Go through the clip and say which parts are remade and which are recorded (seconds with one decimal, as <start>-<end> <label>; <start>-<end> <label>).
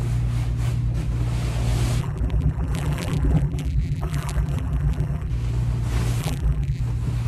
0.0-2.0 recorded; 2.0-5.3 remade; 5.3-6.2 recorded; 6.2-6.8 remade; 6.8-7.3 recorded